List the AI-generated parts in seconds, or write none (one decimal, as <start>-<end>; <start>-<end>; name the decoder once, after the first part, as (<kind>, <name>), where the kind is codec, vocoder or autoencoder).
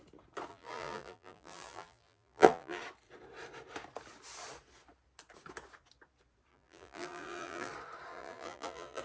0.5-2.8 (vocoder, BigVGAN v2); 6.5-7.7; 8.1-9.0